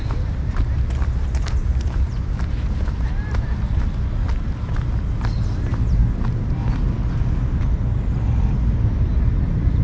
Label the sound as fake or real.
real